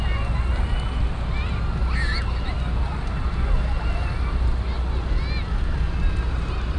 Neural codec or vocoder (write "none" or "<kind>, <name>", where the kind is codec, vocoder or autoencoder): none